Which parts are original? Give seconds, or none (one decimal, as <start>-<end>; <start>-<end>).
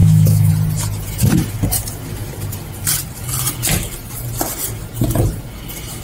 0.5-6.0